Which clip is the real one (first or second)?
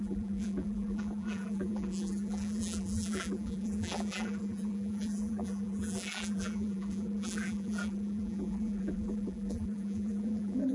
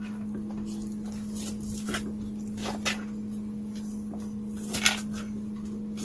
second